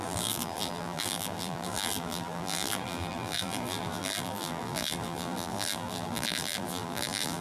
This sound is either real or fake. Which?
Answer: fake